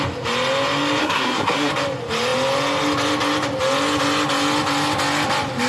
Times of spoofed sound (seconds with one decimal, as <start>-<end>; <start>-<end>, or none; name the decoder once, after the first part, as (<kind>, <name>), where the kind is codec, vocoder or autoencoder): 1.0-1.7 (codec, SNAC)